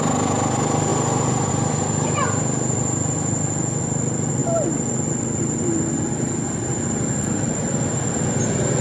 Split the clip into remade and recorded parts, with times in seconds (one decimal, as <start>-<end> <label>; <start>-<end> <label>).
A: 0.0-8.8 recorded